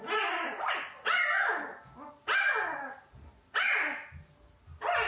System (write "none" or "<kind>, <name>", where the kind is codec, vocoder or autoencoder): none